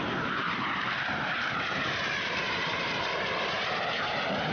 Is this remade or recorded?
remade